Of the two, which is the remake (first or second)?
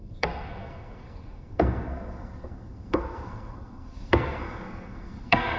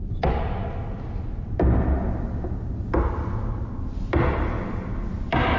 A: first